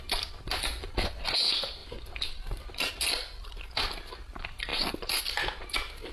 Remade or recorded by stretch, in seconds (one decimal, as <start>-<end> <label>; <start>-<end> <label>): 0.0-4.7 recorded; 4.7-5.3 remade; 5.3-6.1 recorded